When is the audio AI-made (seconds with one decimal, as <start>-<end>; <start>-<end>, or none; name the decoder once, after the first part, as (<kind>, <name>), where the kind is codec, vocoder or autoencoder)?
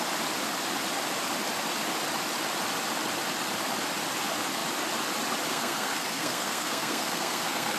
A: 5.5-7.8 (codec, SNAC)